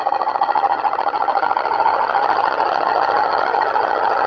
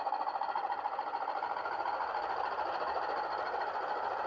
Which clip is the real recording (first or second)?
second